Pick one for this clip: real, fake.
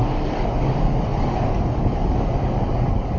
fake